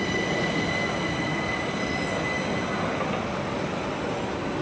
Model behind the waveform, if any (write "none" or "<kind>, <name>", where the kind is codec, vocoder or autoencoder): none